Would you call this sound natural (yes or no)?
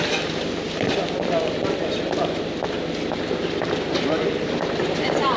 yes